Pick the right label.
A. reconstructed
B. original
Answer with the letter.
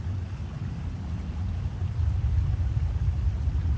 B